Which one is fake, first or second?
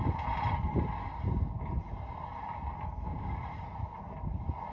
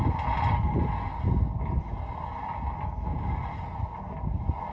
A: first